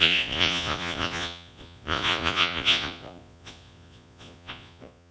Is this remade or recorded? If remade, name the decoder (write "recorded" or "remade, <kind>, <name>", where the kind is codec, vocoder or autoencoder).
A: remade, vocoder, Vocos